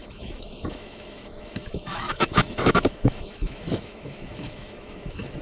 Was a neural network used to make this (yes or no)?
yes